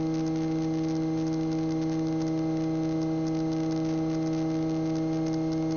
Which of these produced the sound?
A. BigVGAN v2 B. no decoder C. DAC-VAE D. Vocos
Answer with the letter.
B